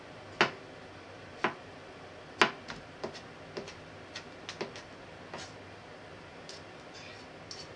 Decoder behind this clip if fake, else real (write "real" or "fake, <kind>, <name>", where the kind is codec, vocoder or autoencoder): real